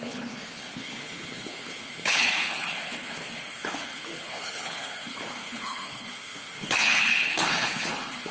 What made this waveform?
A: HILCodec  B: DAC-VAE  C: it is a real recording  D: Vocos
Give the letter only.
A